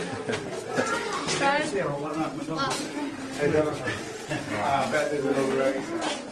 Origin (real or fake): real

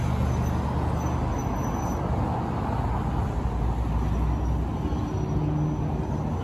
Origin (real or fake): real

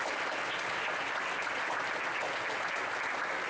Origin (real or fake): real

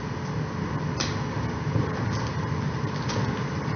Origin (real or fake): real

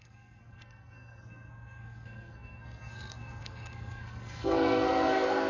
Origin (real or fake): fake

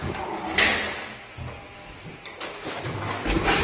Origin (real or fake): real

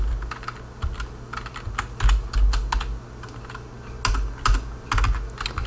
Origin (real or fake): real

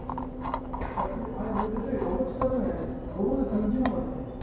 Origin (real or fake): real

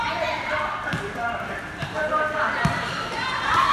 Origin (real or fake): real